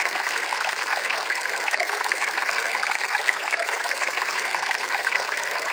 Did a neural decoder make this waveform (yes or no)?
yes